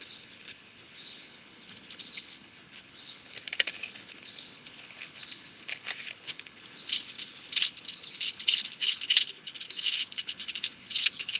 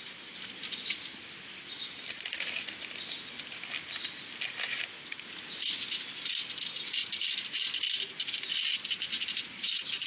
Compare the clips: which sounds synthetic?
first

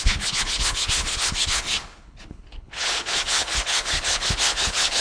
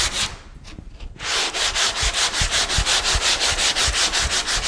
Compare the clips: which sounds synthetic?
first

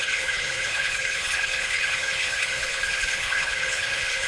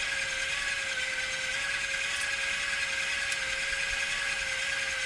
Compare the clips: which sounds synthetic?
first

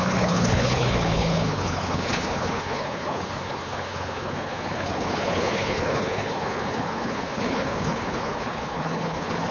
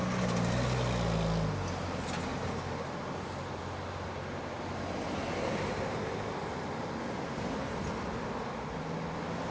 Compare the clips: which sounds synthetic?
first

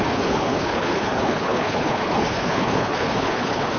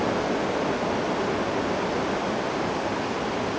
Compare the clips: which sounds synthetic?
first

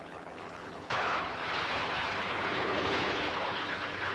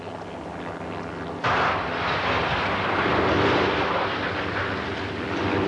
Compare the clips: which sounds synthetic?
first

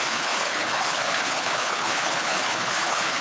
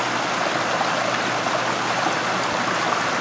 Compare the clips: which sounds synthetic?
first